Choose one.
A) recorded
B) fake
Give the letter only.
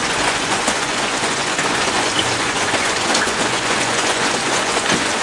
B